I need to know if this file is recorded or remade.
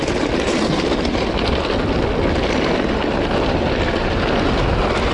recorded